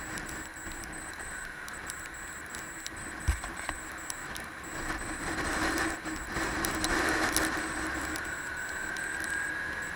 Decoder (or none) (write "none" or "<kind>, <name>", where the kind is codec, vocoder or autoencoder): none